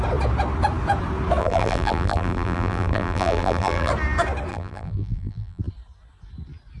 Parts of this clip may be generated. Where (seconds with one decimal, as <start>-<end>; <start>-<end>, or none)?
1.4-3.9; 4.5-5.6